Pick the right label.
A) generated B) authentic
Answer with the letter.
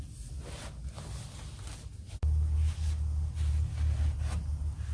B